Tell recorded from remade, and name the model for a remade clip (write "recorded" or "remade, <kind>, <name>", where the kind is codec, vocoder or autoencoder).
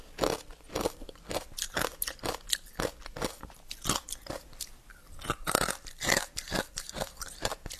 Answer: recorded